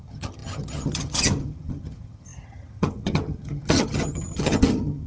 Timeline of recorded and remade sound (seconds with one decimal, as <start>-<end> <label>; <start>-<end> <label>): 0.0-5.1 remade